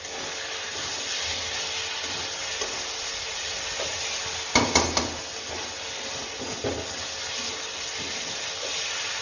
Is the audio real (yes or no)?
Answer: yes